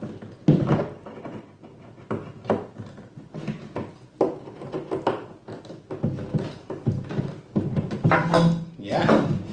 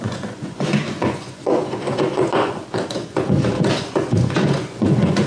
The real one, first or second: first